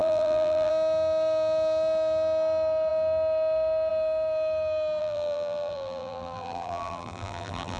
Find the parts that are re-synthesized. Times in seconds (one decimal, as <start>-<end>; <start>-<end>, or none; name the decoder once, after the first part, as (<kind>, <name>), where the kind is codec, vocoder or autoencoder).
0.0-0.7 (vocoder, BigVGAN v2); 5.0-7.8